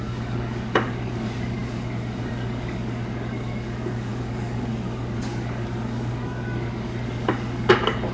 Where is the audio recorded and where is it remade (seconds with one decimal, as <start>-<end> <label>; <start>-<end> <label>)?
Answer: 0.0-8.1 remade